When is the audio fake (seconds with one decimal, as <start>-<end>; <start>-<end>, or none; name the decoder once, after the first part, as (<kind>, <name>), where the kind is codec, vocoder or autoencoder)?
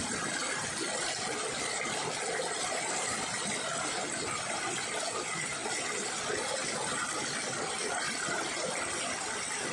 none